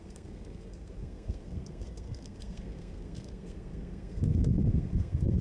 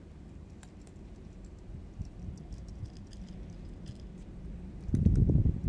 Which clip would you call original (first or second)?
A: second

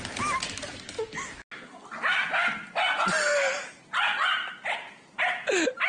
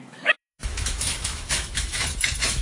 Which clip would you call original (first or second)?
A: first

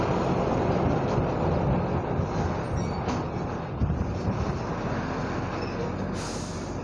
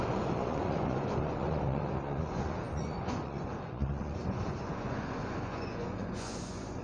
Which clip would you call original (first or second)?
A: first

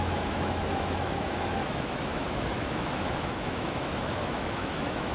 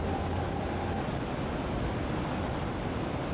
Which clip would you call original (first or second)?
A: second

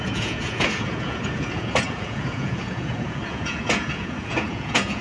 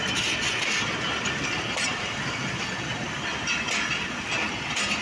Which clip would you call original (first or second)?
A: second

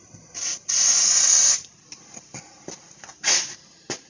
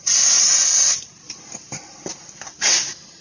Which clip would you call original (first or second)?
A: first